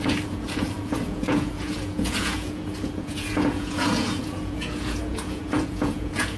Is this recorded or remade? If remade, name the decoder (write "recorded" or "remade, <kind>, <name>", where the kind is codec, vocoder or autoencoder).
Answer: remade, vocoder, Vocos